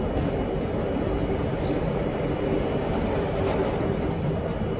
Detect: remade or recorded recorded